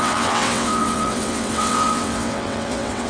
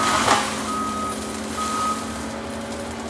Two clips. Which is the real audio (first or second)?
second